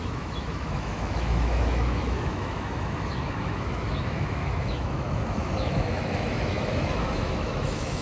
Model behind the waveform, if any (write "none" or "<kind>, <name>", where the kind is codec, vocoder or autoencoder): autoencoder, DAC-VAE